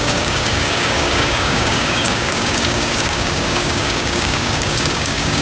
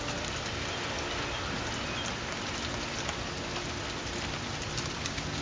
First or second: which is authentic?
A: second